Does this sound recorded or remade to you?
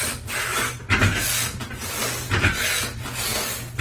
recorded